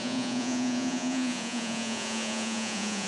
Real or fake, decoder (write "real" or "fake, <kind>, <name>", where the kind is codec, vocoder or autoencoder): fake, vocoder, Vocos